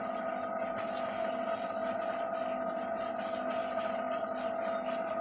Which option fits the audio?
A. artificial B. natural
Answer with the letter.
B